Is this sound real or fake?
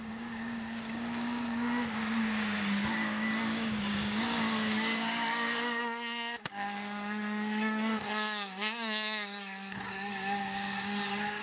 fake